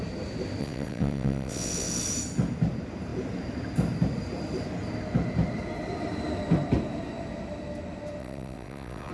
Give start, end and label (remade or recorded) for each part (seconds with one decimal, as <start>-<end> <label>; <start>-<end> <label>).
0.0-0.6 recorded; 0.6-2.0 remade; 2.0-8.2 recorded; 8.2-9.1 remade